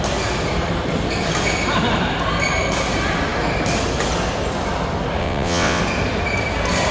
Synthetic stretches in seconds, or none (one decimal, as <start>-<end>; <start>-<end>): 5.2-5.8